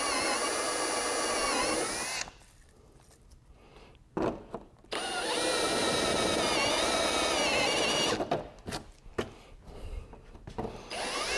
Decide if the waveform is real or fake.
real